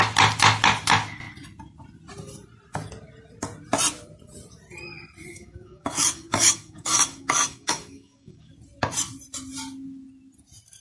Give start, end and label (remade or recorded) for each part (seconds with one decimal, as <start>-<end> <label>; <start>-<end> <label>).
0.0-5.3 recorded; 5.3-8.5 remade; 8.5-10.8 recorded